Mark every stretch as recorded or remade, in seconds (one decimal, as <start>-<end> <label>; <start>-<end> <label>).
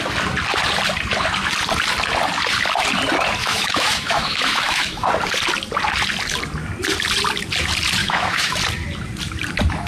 0.0-3.4 recorded; 3.4-5.1 remade; 5.1-8.0 recorded; 8.0-8.6 remade; 8.6-9.9 recorded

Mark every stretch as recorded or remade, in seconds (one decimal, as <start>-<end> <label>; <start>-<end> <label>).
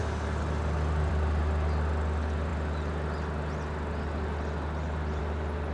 0.0-5.7 recorded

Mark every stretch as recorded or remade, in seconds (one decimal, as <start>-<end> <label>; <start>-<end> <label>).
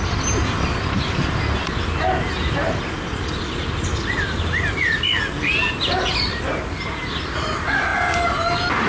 0.0-8.9 recorded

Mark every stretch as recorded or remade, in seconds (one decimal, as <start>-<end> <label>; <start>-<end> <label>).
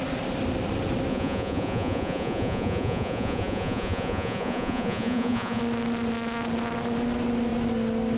0.0-1.1 recorded; 1.1-5.6 remade; 5.6-8.2 recorded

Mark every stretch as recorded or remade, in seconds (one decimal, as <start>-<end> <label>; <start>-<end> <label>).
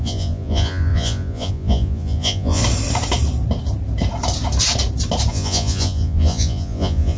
0.0-2.6 remade; 2.6-5.3 recorded; 5.3-7.2 remade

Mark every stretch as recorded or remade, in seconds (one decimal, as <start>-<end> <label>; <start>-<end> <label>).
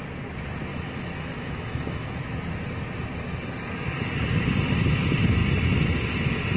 0.0-0.7 recorded; 0.7-2.2 remade; 2.2-6.6 recorded